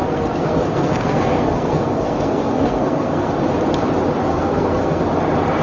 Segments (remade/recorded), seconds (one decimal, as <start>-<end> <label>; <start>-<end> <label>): 0.0-3.3 remade; 3.3-4.2 recorded; 4.2-5.0 remade; 5.0-5.6 recorded